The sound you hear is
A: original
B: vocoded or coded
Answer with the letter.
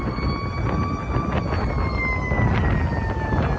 A